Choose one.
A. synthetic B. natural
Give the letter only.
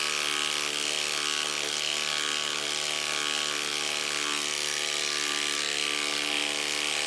B